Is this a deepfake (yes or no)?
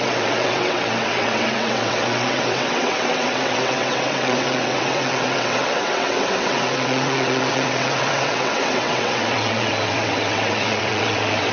yes